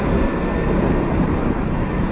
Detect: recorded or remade recorded